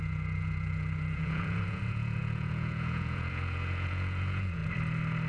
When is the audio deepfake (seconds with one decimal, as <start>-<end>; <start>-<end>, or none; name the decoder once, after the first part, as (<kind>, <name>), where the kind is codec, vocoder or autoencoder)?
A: 0.0-4.6 (vocoder, Vocos)